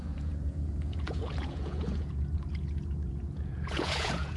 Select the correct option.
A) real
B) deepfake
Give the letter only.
B